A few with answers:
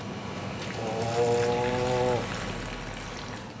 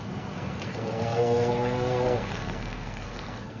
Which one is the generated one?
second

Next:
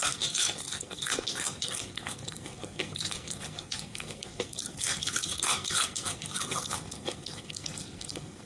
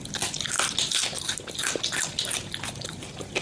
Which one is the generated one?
first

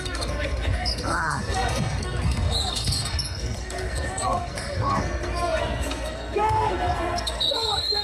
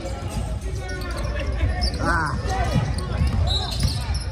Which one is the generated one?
first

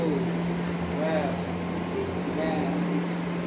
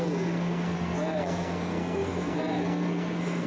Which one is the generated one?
second